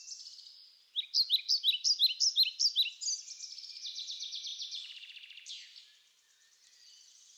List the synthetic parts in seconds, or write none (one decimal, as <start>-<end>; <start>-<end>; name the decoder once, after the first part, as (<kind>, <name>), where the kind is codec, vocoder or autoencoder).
4.5-5.5 (vocoder, BigVGAN v2)